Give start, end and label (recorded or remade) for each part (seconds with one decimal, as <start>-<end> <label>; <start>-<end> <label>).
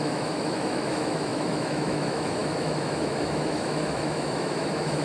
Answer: 0.0-5.0 remade